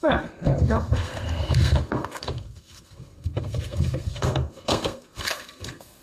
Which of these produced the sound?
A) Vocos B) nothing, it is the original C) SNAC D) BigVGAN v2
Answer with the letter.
C